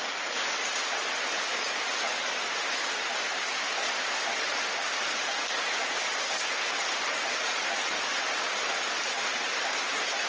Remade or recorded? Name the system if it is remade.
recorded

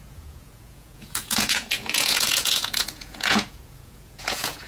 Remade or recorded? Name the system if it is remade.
remade, vocoder, Vocos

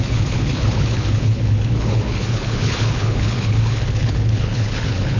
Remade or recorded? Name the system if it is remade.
remade, codec, HILCodec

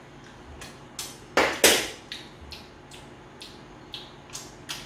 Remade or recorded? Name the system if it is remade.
recorded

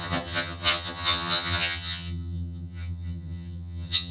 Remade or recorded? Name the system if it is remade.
remade, vocoder, HiFi-GAN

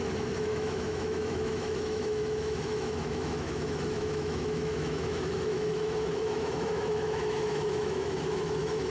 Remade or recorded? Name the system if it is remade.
remade, autoencoder, DAC-VAE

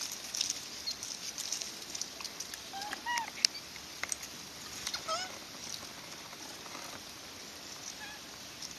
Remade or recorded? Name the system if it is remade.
recorded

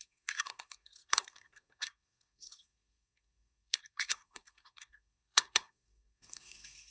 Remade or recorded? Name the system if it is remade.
remade, codec, SNAC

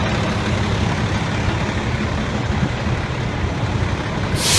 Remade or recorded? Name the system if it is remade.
recorded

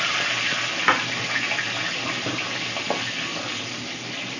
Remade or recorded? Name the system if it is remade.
recorded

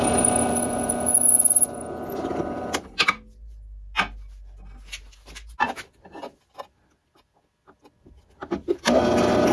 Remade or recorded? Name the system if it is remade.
recorded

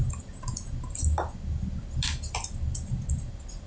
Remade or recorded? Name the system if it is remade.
recorded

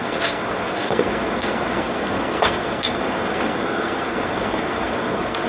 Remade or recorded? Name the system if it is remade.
remade, codec, SNAC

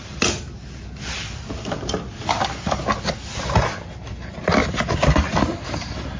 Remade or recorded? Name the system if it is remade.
recorded